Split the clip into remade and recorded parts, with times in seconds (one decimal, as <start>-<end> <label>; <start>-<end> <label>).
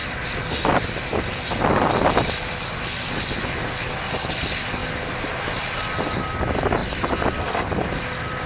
0.0-6.8 recorded; 6.8-7.4 remade; 7.4-8.5 recorded